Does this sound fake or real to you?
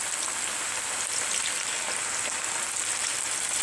real